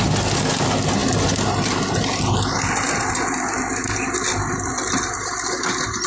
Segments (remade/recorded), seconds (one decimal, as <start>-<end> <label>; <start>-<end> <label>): 0.0-6.1 recorded